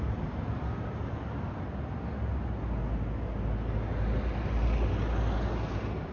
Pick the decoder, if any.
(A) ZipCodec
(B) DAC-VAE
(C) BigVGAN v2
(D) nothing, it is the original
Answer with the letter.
D